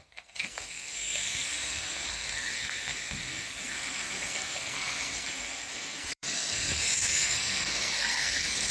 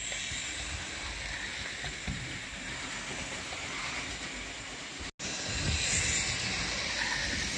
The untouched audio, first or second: second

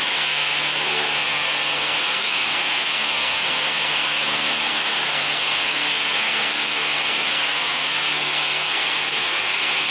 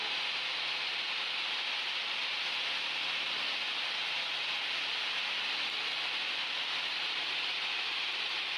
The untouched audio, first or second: second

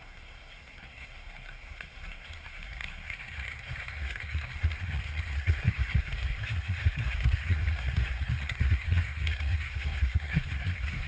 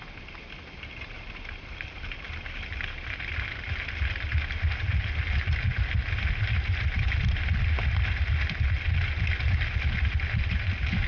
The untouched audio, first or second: second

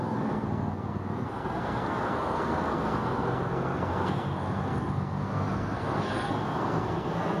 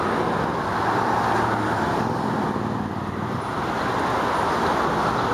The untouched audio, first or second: second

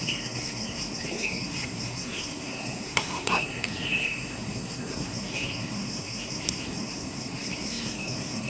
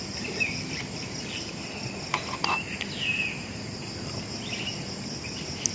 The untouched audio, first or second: second